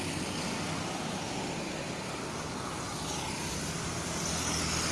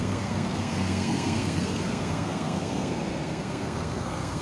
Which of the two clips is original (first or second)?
first